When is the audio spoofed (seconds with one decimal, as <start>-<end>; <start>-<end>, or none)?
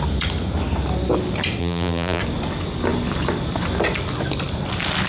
1.6-2.2